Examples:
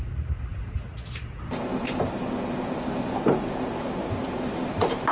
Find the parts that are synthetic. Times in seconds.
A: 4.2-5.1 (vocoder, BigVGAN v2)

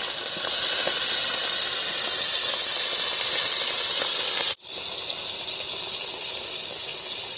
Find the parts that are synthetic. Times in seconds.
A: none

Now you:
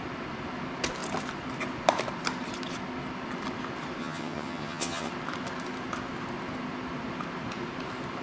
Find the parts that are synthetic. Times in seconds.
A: 4.0-5.1 (vocoder, HiFi-GAN)

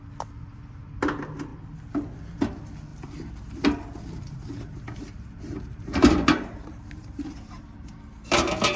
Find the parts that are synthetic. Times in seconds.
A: 2.9-7.6 (vocoder, BigVGAN v2)

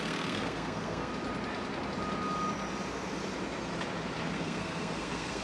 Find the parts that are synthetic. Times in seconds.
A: 0.0-1.1 (codec, SNAC); 4.3-5.4

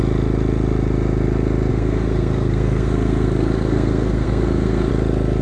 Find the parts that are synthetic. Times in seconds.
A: 1.7-4.9 (codec, SNAC)

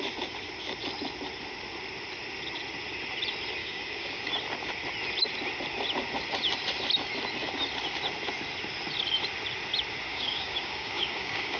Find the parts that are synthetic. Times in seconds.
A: 3.6-4.3 (codec, DAC); 10.1-11.6